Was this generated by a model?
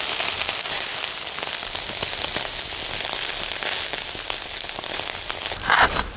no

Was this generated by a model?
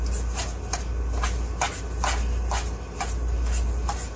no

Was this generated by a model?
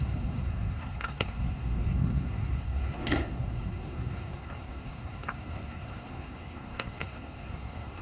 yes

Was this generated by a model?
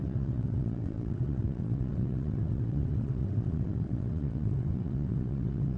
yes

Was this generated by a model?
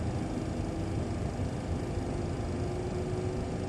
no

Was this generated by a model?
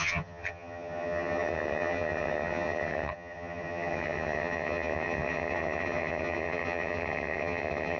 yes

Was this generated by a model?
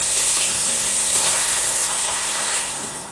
yes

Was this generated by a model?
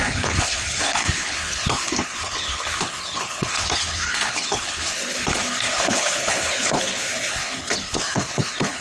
yes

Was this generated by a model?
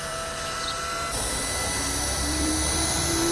yes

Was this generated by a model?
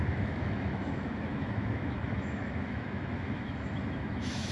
yes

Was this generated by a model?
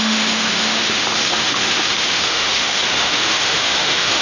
yes